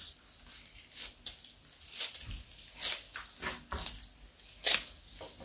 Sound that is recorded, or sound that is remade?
recorded